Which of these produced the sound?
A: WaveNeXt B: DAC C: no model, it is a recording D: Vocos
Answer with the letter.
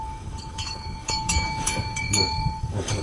B